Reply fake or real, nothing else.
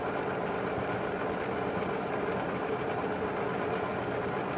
real